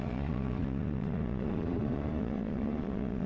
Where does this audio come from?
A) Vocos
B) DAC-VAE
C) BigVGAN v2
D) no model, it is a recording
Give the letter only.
A